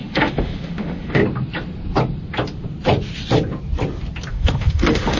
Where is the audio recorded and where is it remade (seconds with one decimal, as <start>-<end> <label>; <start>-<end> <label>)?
0.0-1.2 remade; 1.2-4.3 recorded; 4.3-5.2 remade